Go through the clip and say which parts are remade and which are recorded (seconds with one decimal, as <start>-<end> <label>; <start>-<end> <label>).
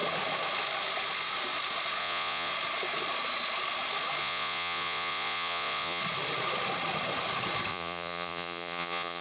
0.0-2.0 recorded; 2.0-2.5 remade; 2.5-4.2 recorded; 4.2-6.0 remade; 6.0-7.7 recorded; 7.7-9.2 remade